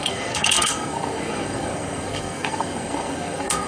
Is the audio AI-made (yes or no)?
yes